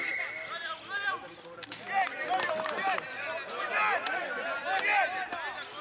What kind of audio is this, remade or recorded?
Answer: recorded